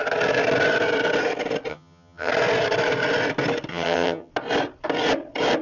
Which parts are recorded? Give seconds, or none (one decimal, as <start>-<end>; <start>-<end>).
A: 0.0-1.7; 2.3-3.7; 4.3-5.6